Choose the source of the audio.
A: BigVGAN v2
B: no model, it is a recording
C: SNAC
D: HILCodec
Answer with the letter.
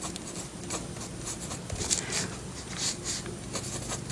B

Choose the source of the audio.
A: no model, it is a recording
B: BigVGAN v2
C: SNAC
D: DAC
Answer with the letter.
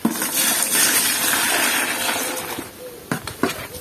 A